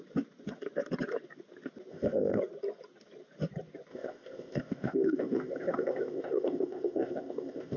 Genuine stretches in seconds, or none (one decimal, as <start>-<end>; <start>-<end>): 0.0-1.9; 2.4-3.9